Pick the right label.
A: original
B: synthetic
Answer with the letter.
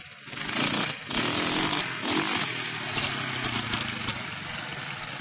A